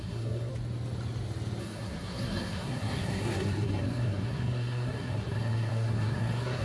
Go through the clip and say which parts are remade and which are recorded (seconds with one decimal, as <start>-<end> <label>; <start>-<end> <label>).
0.0-0.5 remade; 0.5-1.6 recorded; 1.6-6.6 remade